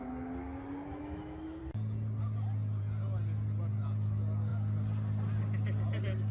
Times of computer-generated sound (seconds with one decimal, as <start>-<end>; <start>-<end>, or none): 0.9-1.6